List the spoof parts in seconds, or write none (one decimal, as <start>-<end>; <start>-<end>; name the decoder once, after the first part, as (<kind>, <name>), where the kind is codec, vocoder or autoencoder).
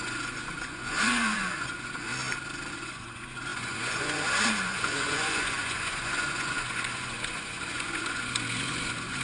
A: 0.0-2.1 (vocoder, Vocos); 2.7-9.2